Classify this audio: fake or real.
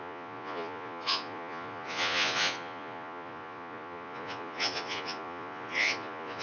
fake